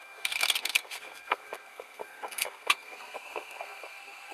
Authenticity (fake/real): fake